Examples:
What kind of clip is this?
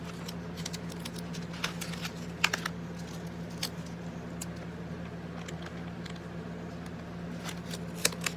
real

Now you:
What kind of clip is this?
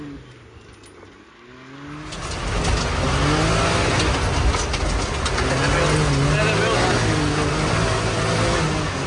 real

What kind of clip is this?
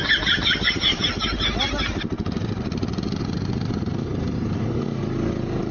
real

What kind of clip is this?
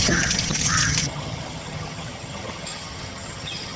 fake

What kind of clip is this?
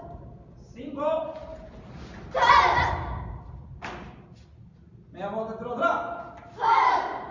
real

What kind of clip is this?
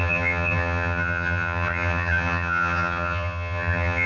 fake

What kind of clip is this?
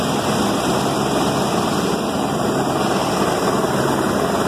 real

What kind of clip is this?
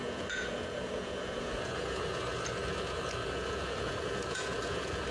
fake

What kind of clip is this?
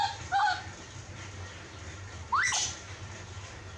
real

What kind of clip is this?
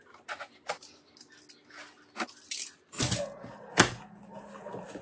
real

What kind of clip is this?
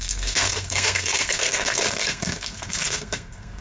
fake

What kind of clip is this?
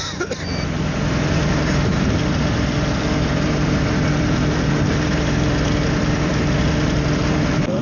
fake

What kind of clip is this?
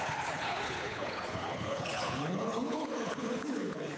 fake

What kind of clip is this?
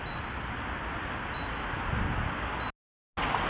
real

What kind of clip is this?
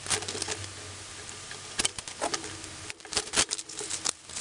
real